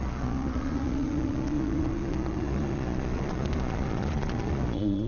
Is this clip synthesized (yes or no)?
yes